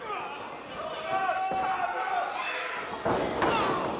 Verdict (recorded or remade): recorded